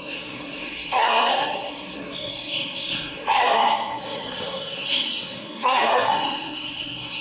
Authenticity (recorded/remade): remade